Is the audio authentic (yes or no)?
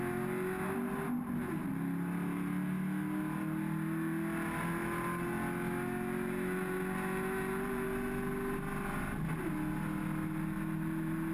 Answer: yes